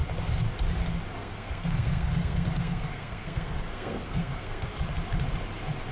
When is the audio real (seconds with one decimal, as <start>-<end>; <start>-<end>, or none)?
0.0-1.2; 4.7-5.9